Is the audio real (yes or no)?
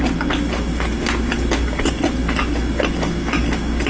yes